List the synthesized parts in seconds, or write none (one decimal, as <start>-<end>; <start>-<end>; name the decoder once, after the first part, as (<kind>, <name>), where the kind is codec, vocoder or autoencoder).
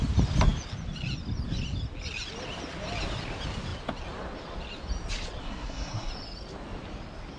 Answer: 5.4-6.1 (codec, SNAC)